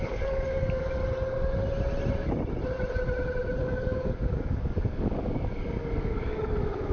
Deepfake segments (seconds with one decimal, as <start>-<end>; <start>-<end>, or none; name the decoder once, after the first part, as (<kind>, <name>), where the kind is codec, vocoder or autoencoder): 0.0-1.0 (codec, DAC); 3.6-6.9